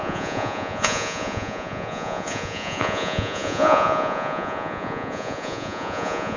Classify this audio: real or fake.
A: fake